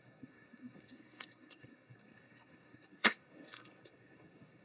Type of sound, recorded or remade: remade